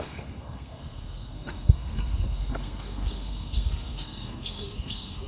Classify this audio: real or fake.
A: fake